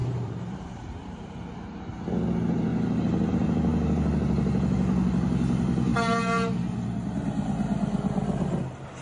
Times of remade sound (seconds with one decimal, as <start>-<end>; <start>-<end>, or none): 0.0-1.4; 5.9-6.7